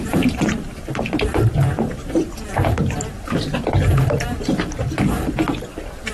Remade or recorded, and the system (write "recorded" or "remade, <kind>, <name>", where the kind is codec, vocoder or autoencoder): remade, vocoder, BigVGAN v2